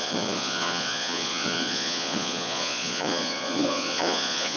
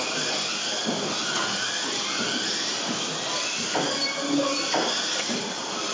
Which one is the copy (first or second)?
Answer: first